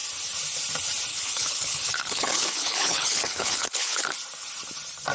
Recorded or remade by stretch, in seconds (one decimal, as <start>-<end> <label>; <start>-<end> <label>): 0.0-1.1 recorded; 1.1-4.0 remade; 4.0-5.1 recorded